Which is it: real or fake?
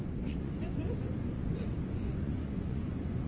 fake